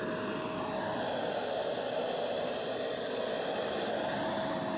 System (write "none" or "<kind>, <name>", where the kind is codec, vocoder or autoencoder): none